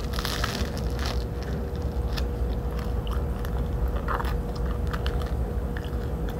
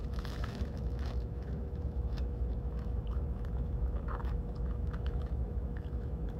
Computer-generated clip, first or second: second